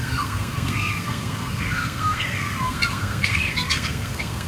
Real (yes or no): no